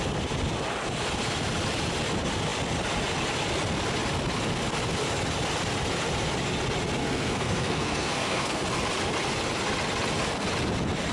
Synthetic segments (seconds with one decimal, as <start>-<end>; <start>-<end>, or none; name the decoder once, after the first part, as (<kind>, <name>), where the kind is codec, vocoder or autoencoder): 7.0-8.6 (codec, SNAC)